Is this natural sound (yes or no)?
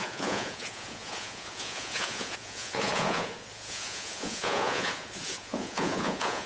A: no